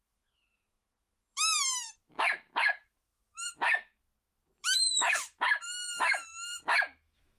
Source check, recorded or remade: remade